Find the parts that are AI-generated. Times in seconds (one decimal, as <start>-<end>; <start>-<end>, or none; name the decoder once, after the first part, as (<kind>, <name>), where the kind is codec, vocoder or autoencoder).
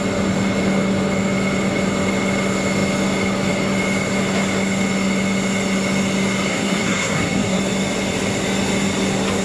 6.5-7.6 (codec, SNAC)